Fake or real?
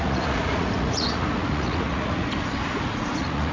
fake